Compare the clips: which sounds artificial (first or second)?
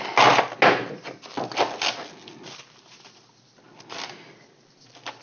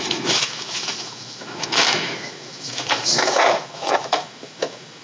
second